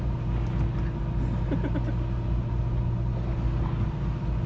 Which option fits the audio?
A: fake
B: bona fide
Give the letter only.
B